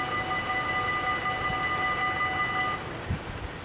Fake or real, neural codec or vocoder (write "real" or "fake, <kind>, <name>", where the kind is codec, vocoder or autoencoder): real